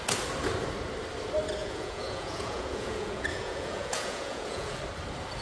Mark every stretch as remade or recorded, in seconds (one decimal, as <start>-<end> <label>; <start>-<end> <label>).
0.0-1.6 recorded; 1.6-4.8 remade; 4.8-5.4 recorded